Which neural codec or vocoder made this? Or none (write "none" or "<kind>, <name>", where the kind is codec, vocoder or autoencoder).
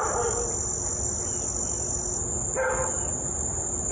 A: none